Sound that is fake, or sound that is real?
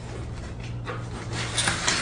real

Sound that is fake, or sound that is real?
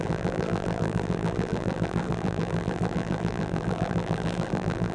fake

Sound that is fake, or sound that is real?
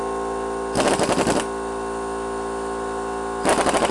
real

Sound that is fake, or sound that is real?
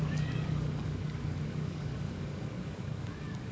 fake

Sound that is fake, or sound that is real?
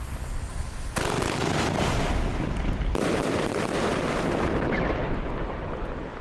real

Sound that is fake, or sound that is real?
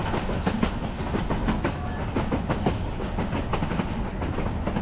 real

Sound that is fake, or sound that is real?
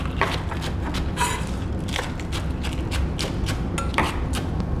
real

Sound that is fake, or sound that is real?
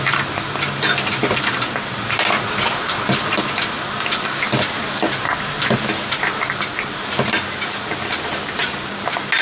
real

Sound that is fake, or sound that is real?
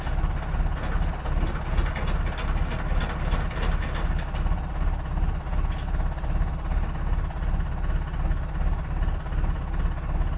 real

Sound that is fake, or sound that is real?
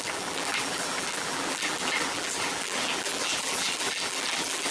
fake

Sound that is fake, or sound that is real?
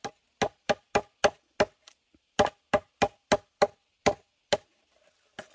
real